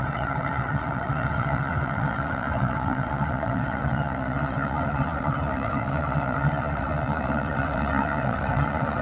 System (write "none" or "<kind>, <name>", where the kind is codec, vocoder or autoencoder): vocoder, WaveNeXt